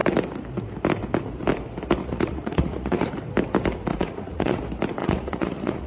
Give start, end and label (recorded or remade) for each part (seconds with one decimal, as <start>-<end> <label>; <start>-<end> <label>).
0.0-2.0 recorded; 2.0-3.1 remade; 3.1-3.9 recorded; 3.9-4.6 remade; 4.6-5.0 recorded; 5.0-5.9 remade